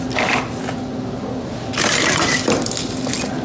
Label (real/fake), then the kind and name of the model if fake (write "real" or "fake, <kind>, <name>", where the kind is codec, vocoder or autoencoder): real